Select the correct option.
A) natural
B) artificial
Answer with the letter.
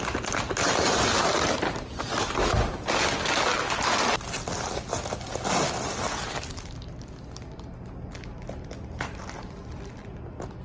A